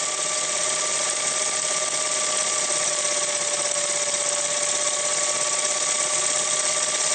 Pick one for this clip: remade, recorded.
recorded